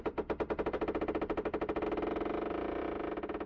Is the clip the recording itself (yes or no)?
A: yes